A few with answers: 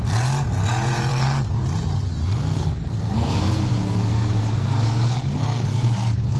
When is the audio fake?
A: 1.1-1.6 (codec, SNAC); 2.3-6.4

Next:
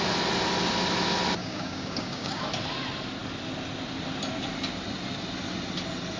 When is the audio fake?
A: 1.4-2.4 (codec, DAC)

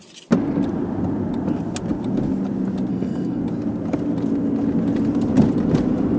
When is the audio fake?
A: 2.9-3.4 (codec, SNAC)